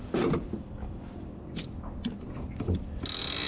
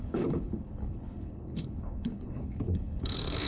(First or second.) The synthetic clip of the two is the second